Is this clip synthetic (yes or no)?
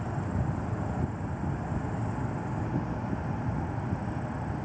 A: no